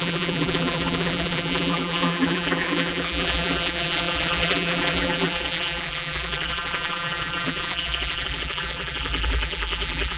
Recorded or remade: remade